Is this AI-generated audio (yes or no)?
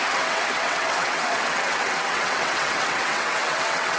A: yes